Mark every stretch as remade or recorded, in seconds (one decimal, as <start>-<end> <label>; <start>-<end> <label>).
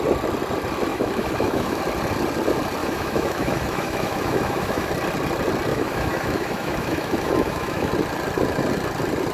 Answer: 0.0-0.9 recorded; 0.9-1.8 remade; 1.8-2.8 recorded; 2.8-4.9 remade; 4.9-5.7 recorded; 5.7-7.9 remade; 7.9-9.3 recorded